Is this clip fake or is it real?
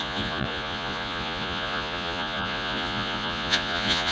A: fake